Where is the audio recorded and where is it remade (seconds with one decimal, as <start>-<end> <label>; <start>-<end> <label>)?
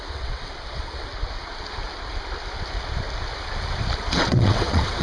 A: 0.0-1.1 remade; 1.1-4.1 recorded; 4.1-5.0 remade